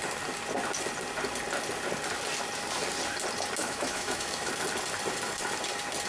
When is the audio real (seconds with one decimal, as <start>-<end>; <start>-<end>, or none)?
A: 0.0-3.6; 4.5-6.1